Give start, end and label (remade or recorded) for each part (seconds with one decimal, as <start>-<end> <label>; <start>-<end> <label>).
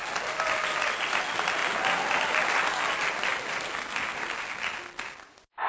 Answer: 0.0-5.7 recorded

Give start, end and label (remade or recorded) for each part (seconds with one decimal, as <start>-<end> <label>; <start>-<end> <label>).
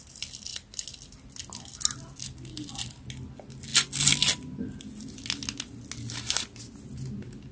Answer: 0.0-7.5 recorded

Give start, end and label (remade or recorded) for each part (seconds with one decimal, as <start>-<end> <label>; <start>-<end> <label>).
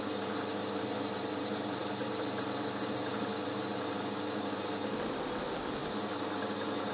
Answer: 0.0-6.9 recorded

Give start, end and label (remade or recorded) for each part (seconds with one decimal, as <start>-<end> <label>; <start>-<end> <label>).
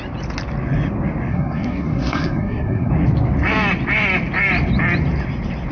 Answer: 0.0-1.3 recorded; 1.3-2.9 remade; 2.9-5.7 recorded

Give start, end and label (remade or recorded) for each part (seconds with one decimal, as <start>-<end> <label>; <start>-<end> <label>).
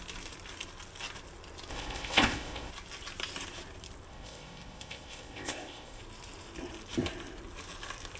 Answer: 0.0-1.7 recorded; 1.7-2.7 remade; 2.7-4.1 recorded; 4.1-6.0 remade; 6.0-8.2 recorded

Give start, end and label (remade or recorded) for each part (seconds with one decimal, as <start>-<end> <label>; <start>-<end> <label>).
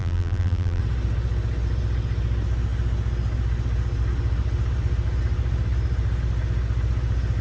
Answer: 0.0-0.8 remade; 0.8-7.4 recorded